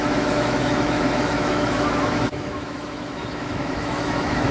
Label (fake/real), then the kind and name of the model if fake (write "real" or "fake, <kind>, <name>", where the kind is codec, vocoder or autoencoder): fake, autoencoder, DAC-VAE